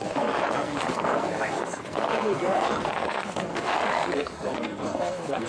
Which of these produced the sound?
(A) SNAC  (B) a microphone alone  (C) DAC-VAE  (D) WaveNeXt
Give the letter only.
A